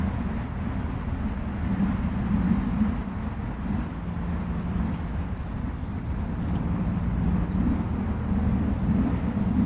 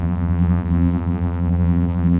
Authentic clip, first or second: first